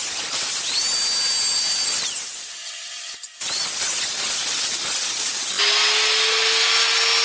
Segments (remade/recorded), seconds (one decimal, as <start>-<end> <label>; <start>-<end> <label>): 0.0-7.2 recorded